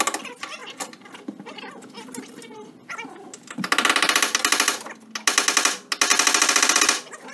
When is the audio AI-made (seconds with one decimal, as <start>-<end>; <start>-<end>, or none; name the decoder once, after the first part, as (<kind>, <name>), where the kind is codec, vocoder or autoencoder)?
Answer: none